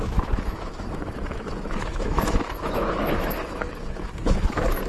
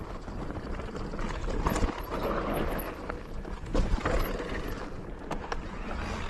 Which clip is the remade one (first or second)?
first